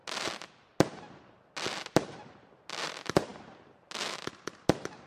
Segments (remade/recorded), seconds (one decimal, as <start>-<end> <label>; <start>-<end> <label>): 0.0-5.1 recorded